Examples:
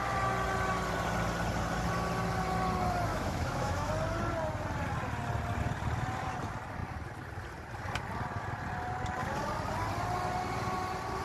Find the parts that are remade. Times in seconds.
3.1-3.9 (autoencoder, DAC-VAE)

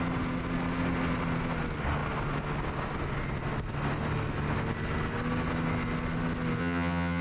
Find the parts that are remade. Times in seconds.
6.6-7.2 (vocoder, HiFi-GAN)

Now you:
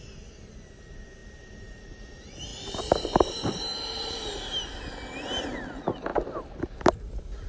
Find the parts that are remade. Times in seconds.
1.2-1.8 (vocoder, BigVGAN v2); 2.5-4.3